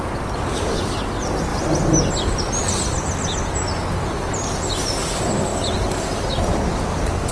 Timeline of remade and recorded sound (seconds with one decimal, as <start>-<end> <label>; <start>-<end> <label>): 0.0-1.5 recorded; 1.5-2.1 remade; 2.1-7.3 recorded